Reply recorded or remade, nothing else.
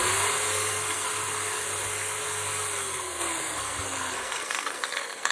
remade